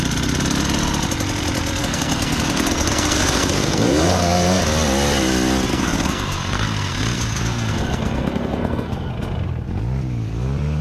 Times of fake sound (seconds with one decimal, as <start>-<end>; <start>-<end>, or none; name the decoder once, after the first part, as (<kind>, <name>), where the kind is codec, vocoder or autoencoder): 1.8-4.6 (codec, SNAC); 5.7-9.1